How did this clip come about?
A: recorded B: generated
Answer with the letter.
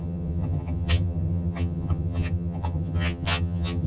B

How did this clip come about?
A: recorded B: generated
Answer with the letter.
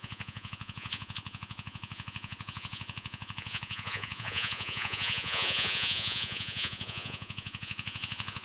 B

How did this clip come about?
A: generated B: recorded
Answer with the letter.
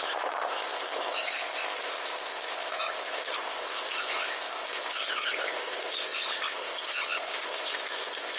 A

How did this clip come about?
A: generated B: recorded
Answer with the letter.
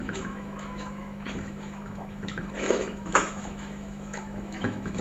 A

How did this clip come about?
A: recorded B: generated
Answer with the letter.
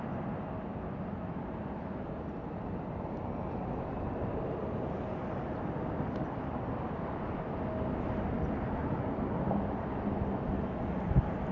A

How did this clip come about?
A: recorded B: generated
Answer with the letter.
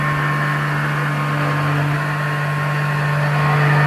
A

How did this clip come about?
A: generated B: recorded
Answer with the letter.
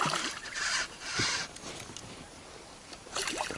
A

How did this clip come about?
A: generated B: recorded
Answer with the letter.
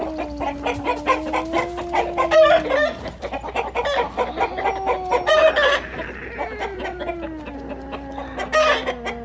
B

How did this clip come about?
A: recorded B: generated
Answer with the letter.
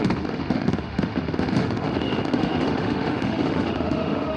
B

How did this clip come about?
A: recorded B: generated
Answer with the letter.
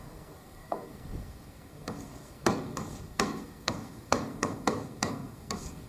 B